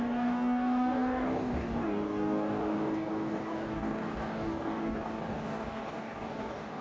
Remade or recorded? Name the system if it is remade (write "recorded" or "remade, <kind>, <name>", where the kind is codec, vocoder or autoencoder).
remade, codec, DAC